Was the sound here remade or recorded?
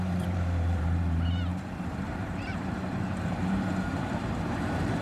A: remade